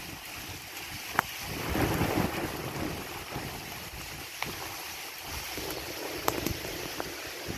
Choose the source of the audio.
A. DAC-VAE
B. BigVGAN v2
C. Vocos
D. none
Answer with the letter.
D